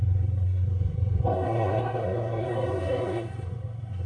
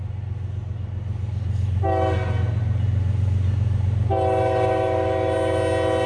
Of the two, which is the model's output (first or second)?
first